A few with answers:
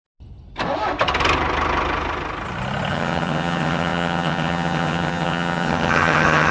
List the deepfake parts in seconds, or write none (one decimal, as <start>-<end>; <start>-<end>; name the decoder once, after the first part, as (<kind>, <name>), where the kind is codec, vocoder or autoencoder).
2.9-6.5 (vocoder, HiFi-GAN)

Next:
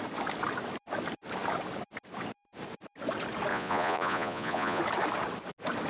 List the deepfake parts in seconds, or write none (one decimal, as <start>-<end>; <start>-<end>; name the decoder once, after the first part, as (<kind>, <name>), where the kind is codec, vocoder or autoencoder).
3.5-4.8 (vocoder, Vocos)

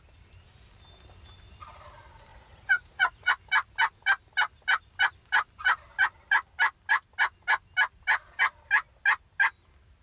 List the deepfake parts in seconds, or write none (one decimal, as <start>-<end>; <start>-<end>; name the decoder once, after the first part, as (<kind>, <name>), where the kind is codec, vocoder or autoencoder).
2.3-3.3 (vocoder, Vocos)

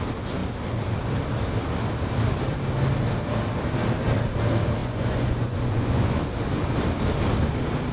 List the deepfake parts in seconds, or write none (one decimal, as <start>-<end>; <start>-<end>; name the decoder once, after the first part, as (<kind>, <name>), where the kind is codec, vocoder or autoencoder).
4.8-6.2 (vocoder, Vocos)

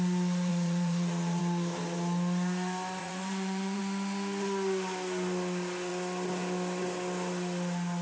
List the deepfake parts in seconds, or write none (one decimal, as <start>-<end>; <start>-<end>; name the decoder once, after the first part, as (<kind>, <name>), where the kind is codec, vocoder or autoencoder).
0.5-1.4 (vocoder, Vocos); 3.0-3.8